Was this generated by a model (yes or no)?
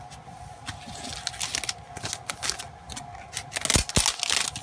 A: no